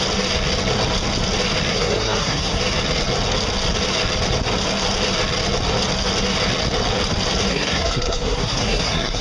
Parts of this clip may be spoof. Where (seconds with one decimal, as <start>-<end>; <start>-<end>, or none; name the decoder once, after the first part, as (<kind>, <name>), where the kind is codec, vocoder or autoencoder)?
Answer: 1.7-2.6 (codec, SNAC); 7.5-9.2